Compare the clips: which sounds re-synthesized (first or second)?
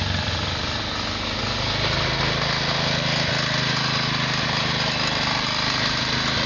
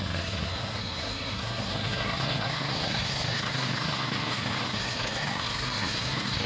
second